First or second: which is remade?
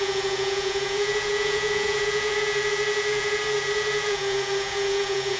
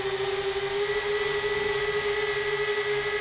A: first